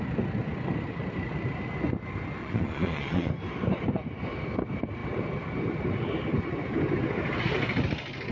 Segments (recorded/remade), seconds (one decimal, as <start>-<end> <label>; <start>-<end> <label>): 0.0-2.4 recorded; 2.4-3.3 remade; 3.3-8.3 recorded